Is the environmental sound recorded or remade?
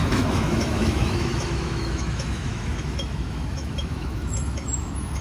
remade